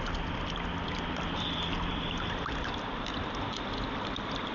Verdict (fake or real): real